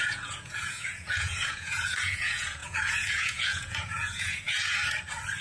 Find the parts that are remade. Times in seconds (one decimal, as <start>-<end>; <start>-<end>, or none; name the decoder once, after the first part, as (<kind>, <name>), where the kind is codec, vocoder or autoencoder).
0.0-4.8 (vocoder, Vocos)